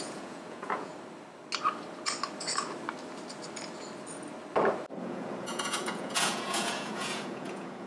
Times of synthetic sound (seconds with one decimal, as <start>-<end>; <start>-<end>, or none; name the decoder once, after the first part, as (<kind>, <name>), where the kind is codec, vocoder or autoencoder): 0.0-0.9 (vocoder, Vocos); 5.0-7.9